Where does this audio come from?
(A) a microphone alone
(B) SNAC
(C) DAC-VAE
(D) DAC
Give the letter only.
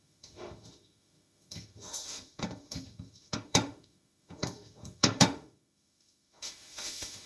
C